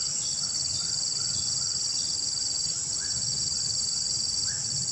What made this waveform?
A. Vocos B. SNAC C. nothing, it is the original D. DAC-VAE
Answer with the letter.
C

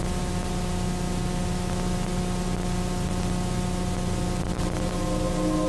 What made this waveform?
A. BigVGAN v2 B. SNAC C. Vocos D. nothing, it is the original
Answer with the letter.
D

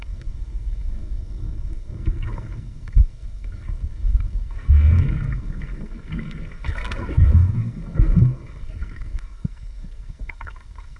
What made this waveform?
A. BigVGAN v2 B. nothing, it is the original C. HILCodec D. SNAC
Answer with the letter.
D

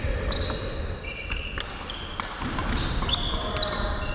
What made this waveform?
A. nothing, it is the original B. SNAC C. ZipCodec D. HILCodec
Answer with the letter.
A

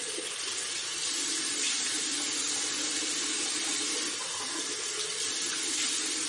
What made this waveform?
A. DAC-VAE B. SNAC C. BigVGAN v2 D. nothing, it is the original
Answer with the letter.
D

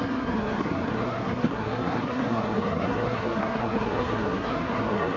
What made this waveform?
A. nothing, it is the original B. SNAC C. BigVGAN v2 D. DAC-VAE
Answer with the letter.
B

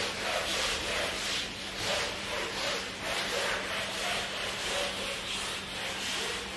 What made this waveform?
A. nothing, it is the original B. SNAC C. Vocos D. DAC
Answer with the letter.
A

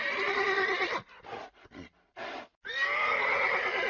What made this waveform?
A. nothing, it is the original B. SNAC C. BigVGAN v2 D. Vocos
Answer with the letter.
A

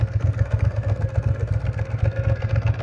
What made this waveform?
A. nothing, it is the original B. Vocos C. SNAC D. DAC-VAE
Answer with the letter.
C